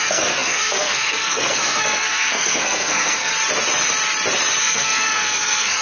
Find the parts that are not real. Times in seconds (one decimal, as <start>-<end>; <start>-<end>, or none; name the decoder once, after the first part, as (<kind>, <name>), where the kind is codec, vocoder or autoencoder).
0.0-3.3 (codec, SNAC); 4.6-5.8